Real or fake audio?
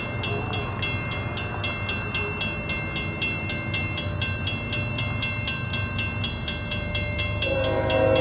real